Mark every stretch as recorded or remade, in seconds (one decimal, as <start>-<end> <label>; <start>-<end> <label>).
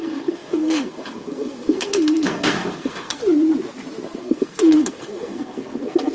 0.0-3.2 remade; 3.2-4.2 recorded; 4.2-6.1 remade